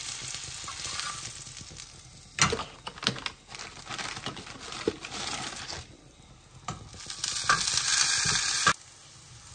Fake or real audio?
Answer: real